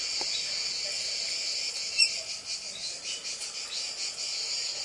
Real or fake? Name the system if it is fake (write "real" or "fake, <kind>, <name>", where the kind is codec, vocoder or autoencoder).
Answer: real